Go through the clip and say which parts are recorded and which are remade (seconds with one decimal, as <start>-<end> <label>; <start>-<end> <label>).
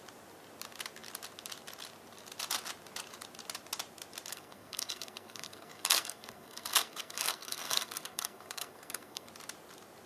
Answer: 0.0-4.3 recorded; 4.3-9.3 remade; 9.3-10.1 recorded